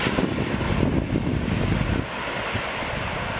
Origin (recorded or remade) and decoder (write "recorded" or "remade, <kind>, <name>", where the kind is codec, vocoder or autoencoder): recorded